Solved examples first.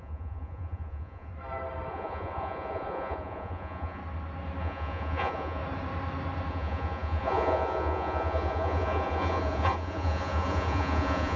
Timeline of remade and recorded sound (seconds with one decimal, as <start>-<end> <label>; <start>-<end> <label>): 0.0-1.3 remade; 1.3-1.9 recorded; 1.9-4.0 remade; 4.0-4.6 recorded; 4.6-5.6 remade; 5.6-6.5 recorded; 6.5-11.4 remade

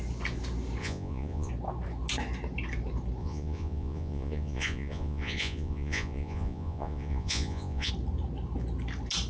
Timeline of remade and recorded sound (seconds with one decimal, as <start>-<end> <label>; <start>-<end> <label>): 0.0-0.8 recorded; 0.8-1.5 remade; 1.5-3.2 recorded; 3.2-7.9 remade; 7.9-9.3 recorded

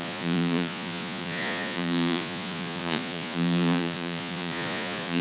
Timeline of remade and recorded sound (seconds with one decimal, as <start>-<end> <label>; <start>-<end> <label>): 0.0-5.2 remade

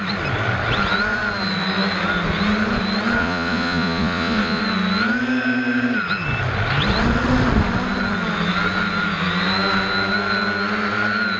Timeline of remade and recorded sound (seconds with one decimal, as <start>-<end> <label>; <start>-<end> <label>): 0.0-3.2 recorded; 3.2-4.6 remade; 4.6-11.4 recorded